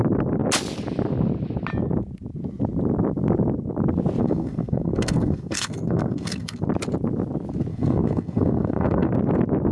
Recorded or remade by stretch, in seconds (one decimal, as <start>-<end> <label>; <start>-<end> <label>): 0.0-4.2 recorded; 4.2-6.6 remade; 6.6-7.7 recorded; 7.7-9.1 remade; 9.1-9.7 recorded